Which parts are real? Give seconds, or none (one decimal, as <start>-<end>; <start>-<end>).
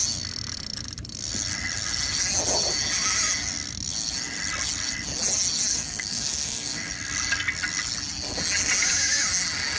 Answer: 0.0-5.7; 6.9-9.8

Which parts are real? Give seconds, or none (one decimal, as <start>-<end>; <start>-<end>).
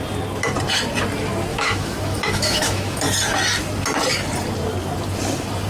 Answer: 0.0-1.5; 3.0-5.7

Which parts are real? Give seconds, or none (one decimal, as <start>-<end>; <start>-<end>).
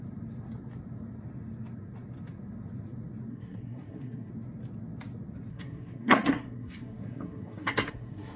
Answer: 0.0-3.3; 4.3-5.5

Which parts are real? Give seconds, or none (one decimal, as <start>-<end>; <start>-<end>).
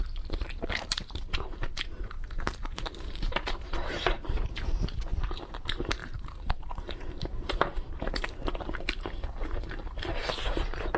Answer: none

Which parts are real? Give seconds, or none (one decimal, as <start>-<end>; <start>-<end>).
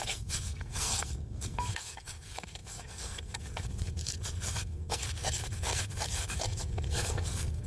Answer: none